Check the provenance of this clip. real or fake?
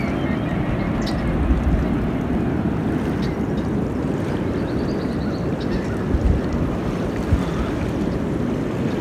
real